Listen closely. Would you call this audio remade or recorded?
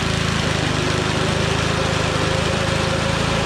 recorded